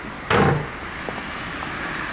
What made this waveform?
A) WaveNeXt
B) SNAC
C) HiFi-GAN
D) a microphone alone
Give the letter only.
D